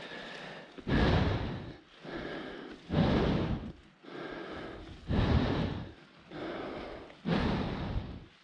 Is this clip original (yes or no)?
yes